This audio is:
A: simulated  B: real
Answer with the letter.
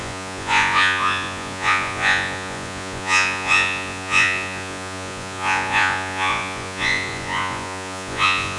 A